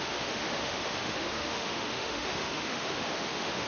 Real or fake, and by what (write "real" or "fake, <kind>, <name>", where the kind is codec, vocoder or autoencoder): fake, autoencoder, DAC-VAE